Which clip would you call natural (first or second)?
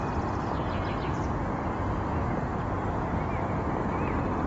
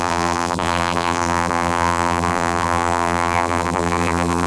first